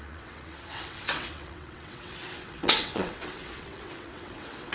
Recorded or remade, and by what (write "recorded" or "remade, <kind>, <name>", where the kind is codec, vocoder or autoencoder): remade, vocoder, WaveNeXt